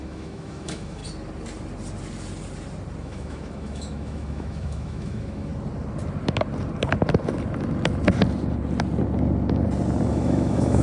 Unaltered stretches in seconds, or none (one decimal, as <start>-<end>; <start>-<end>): 1.0-3.0; 5.5-10.1